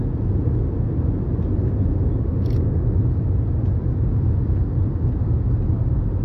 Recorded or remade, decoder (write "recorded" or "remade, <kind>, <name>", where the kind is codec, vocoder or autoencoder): recorded